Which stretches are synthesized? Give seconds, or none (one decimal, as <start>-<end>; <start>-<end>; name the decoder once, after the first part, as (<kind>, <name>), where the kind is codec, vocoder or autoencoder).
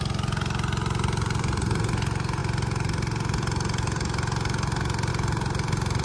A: none